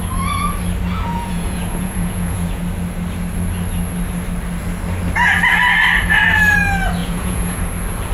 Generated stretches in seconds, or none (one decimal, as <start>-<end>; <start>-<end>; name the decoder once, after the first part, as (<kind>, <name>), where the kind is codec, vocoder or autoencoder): 0.9-2.6 (vocoder, Vocos); 7.0-7.6